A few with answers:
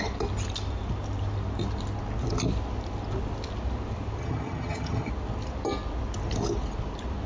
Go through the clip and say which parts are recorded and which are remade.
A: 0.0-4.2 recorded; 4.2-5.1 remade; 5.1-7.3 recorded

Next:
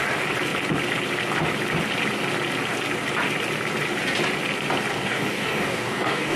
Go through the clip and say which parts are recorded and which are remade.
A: 0.0-4.9 recorded; 4.9-6.4 remade